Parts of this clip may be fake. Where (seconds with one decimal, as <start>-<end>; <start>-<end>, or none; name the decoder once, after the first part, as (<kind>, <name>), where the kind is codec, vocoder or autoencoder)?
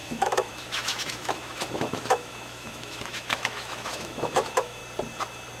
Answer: 0.0-4.8 (autoencoder, DAC-VAE)